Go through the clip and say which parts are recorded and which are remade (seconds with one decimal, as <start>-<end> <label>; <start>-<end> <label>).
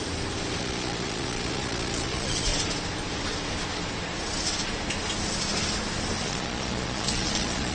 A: 0.0-0.6 recorded; 0.6-2.5 remade; 2.5-6.2 recorded; 6.2-7.7 remade